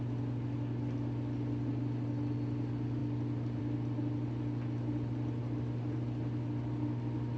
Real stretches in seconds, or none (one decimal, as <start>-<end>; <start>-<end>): 0.0-7.4